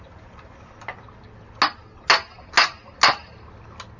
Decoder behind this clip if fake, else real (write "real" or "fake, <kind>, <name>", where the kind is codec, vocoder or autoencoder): real